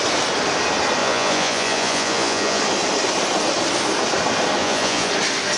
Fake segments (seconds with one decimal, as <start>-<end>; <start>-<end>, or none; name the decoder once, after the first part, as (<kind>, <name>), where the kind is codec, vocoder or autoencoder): 1.0-2.6 (vocoder, Vocos); 4.6-5.1